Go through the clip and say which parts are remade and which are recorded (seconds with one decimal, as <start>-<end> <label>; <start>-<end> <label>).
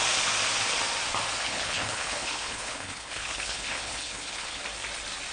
0.0-1.4 recorded; 1.4-4.6 remade; 4.6-5.3 recorded